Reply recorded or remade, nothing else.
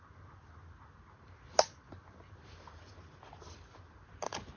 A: recorded